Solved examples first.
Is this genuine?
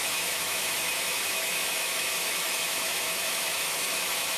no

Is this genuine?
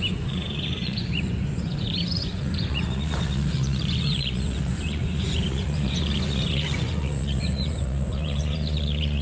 no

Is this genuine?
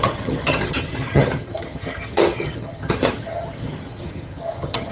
no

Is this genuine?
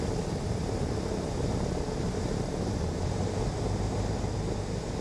yes